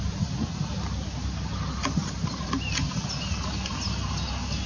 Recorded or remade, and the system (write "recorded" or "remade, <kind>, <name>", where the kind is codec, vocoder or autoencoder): recorded